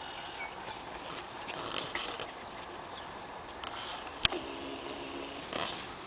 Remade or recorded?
recorded